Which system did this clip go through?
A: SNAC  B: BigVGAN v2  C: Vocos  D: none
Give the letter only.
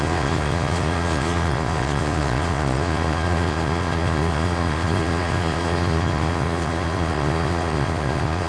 C